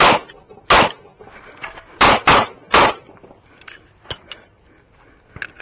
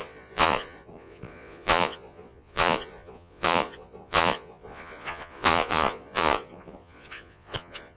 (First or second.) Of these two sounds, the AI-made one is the second